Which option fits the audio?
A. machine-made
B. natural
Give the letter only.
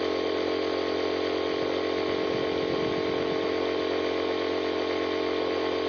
B